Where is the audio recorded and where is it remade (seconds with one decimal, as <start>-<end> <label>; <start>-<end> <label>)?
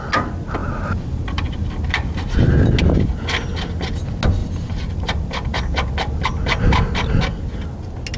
0.0-0.6 recorded; 0.6-2.7 remade; 2.7-4.4 recorded; 4.4-5.6 remade; 5.6-8.2 recorded